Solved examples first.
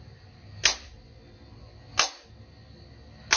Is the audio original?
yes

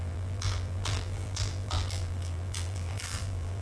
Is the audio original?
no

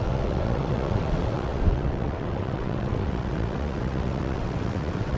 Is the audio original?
no